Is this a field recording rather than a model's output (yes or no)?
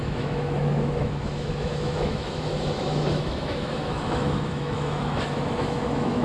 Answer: no